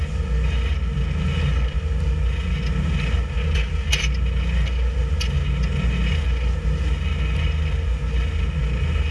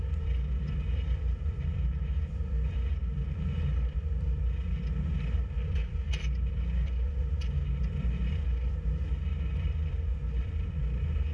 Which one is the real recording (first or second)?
first